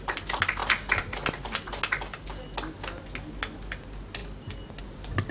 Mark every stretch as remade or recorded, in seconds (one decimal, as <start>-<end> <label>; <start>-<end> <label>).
0.0-5.3 recorded